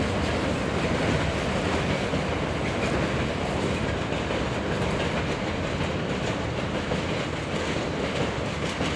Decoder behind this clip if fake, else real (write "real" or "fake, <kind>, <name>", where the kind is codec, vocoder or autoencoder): real